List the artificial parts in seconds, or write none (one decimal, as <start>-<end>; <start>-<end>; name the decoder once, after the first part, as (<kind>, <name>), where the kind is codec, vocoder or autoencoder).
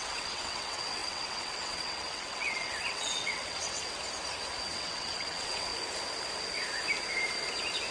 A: 0.0-3.8 (vocoder, WaveNeXt); 4.7-5.7